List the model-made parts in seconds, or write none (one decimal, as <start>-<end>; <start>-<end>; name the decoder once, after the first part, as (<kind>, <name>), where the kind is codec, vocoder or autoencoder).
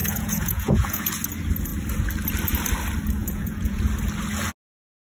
0.0-1.1 (vocoder, Vocos); 3.2-3.9